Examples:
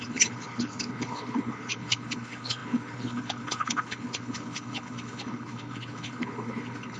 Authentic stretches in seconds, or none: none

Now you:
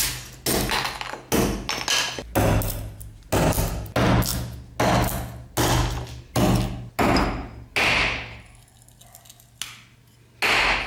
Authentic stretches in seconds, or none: 0.0-10.9

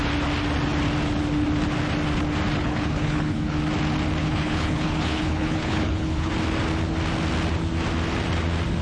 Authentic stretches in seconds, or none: 0.0-2.6; 3.6-4.2; 6.3-8.8